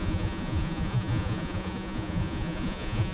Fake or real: fake